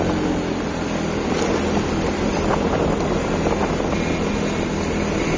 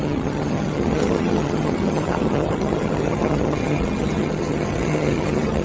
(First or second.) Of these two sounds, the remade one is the second